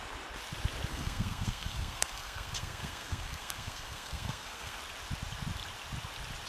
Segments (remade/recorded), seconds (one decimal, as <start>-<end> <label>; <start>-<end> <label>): 0.0-0.9 recorded; 0.9-4.8 remade; 4.8-6.5 recorded